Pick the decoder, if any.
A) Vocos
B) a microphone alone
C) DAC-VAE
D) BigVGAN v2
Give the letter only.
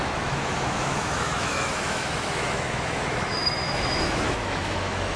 C